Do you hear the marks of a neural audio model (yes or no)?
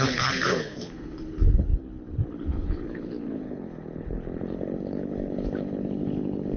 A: yes